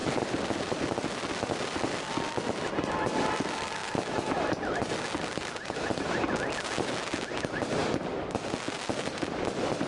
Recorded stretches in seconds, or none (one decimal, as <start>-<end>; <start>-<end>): 7.8-8.8